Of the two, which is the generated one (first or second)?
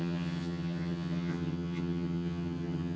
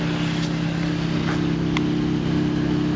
first